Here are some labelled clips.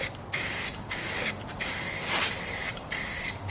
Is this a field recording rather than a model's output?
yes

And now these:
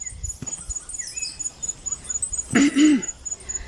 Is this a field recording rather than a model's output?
yes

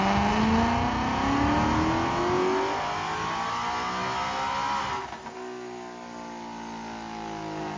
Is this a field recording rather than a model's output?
yes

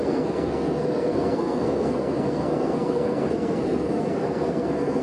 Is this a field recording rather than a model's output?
no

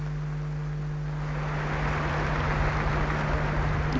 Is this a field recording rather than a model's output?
yes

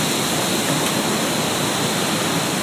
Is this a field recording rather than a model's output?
yes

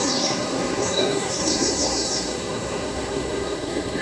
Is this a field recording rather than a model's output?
no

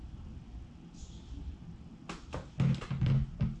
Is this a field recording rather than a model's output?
yes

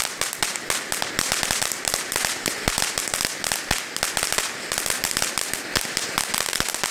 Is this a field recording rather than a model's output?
yes